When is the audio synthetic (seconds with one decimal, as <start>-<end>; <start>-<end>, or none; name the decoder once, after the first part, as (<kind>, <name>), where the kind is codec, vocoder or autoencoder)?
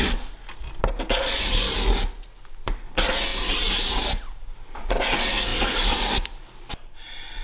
3.3-4.9 (vocoder, BigVGAN v2); 5.5-6.0